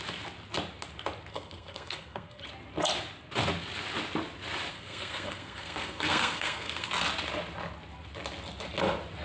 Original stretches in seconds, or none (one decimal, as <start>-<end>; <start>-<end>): 0.0-1.3; 2.4-4.7; 6.9-9.2